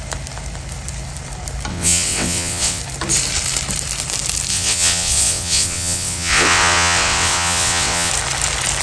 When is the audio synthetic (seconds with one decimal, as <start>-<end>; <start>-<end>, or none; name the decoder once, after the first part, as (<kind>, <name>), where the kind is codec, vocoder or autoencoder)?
1.7-2.8 (vocoder, WaveNeXt); 4.5-8.1